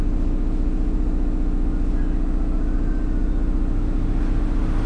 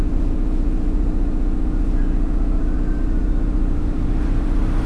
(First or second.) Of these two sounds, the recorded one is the first